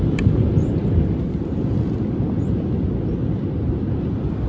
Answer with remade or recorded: recorded